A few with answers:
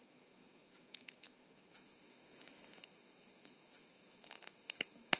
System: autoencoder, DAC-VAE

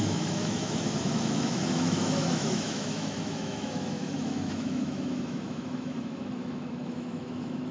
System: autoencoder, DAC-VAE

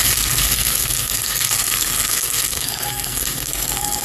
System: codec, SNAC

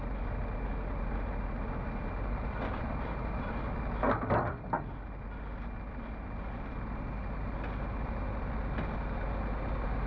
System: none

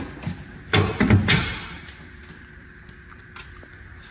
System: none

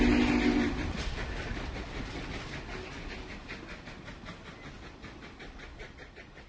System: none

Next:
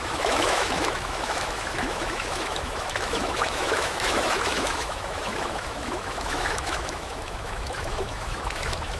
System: autoencoder, DAC-VAE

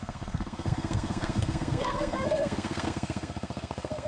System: codec, SNAC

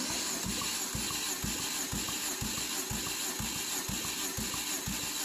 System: none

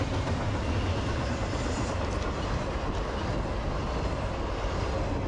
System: none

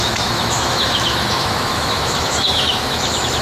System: autoencoder, DAC-VAE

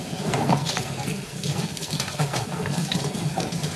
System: codec, SNAC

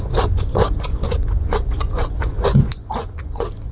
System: vocoder, Vocos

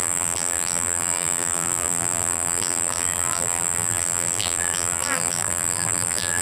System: vocoder, BigVGAN v2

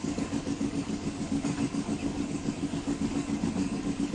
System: codec, DAC